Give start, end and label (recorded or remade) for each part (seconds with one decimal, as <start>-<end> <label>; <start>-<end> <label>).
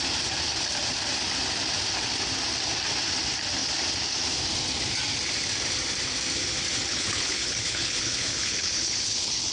0.0-6.9 recorded; 6.9-9.5 remade